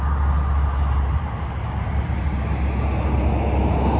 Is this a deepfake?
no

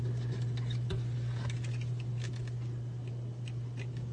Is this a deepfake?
no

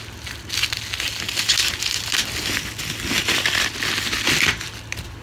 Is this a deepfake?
no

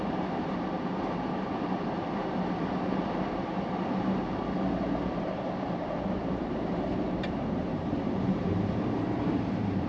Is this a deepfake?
yes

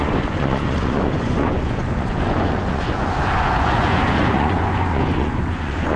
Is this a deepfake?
yes